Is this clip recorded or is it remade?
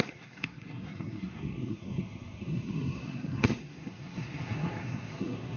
remade